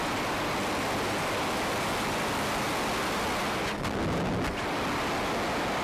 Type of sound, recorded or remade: recorded